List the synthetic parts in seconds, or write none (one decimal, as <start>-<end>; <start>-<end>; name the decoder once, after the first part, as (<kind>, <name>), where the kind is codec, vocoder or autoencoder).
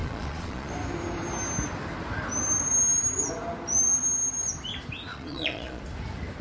0.0-0.7 (vocoder, Vocos); 5.1-5.8